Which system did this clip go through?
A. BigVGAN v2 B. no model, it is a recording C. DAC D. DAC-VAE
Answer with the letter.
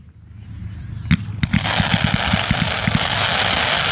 B